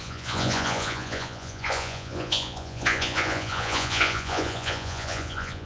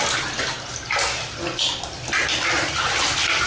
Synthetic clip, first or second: first